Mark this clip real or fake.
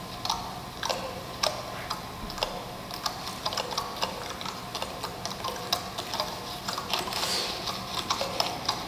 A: real